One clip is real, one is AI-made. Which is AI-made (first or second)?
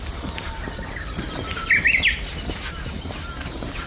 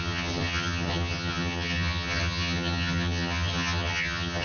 second